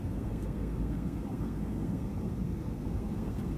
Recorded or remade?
remade